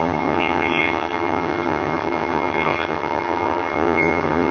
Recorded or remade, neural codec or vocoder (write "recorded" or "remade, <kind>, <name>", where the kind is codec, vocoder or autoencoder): remade, vocoder, HiFi-GAN